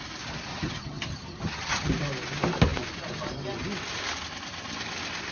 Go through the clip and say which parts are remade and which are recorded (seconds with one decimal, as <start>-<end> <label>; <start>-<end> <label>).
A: 0.0-0.5 recorded; 0.5-1.9 remade; 1.9-5.3 recorded